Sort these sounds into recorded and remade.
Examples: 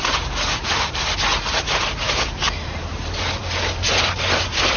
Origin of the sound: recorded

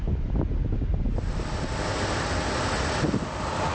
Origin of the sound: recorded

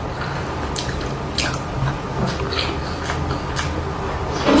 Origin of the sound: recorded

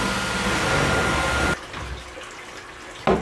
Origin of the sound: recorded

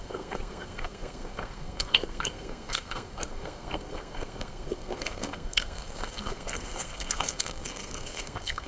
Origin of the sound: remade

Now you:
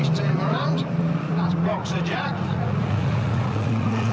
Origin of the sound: remade